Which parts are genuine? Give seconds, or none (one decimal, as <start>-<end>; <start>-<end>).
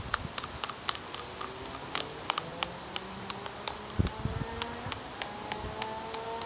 0.0-2.5; 3.2-6.5